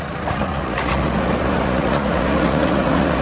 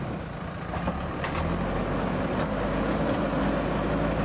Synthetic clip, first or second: first